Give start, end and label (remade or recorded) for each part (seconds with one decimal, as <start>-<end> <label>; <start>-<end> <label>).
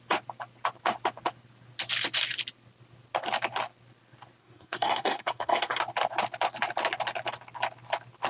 0.0-4.4 recorded; 4.4-5.8 remade; 5.8-8.3 recorded